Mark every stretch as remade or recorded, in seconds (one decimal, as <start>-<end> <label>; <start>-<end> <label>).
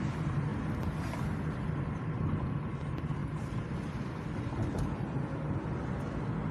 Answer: 0.0-6.5 recorded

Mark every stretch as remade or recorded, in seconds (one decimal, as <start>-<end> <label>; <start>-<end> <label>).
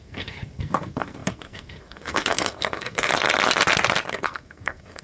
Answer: 0.0-3.1 remade; 3.1-4.1 recorded; 4.1-5.0 remade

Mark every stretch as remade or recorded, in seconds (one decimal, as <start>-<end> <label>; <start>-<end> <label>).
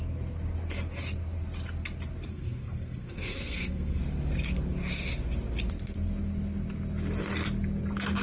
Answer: 0.0-2.3 recorded; 2.3-4.0 remade; 4.0-8.2 recorded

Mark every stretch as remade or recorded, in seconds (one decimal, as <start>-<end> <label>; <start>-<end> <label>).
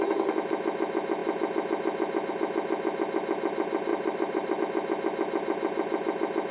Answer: 0.0-3.9 recorded; 3.9-4.6 remade; 4.6-6.5 recorded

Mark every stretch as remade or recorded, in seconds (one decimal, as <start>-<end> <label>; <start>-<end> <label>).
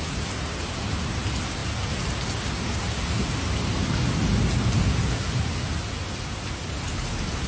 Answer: 0.0-7.5 recorded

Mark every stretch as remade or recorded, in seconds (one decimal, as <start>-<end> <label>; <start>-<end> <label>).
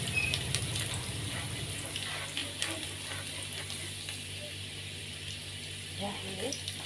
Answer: 0.0-6.9 recorded